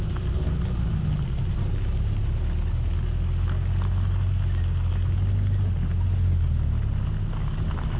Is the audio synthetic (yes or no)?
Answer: no